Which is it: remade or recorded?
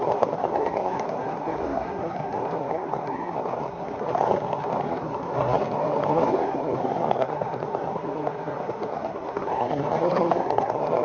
remade